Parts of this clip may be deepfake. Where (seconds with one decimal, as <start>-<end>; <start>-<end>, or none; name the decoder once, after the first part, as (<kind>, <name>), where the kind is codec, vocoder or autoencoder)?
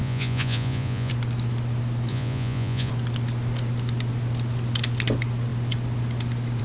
0.0-1.1 (vocoder, Vocos); 2.1-2.9